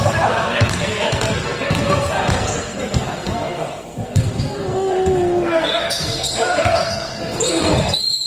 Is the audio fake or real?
fake